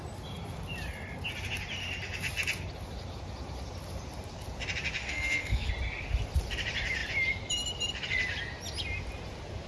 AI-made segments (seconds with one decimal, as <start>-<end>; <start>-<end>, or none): 5.0-5.7